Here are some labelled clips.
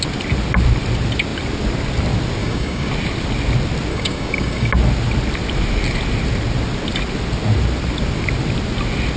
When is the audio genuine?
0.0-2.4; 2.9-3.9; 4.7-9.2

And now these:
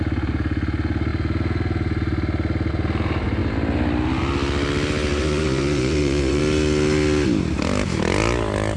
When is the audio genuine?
0.0-5.1; 6.4-8.8